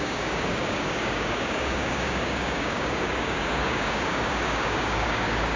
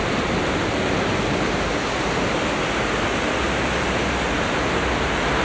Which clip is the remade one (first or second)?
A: first